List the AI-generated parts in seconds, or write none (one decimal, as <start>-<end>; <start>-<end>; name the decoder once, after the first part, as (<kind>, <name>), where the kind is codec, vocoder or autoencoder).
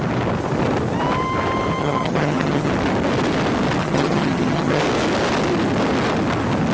1.8-2.7 (vocoder, HiFi-GAN); 3.8-4.8